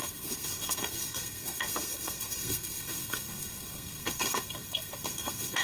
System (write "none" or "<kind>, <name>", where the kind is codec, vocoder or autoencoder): codec, SNAC